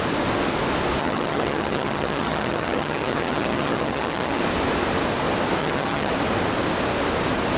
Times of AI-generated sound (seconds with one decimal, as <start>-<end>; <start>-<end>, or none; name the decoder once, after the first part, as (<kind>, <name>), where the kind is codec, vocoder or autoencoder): 1.0-4.4 (vocoder, HiFi-GAN); 5.6-6.1

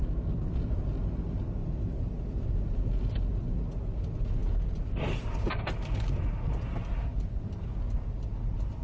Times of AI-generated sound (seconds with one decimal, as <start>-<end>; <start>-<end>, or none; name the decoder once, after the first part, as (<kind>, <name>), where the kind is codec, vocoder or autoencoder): none